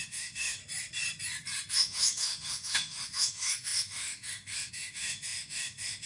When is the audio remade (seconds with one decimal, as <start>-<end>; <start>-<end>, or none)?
0.0-0.6; 1.7-6.1